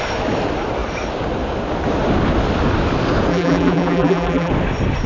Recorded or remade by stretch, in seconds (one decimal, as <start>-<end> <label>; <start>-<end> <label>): 0.0-3.3 recorded; 3.3-4.5 remade; 4.5-5.1 recorded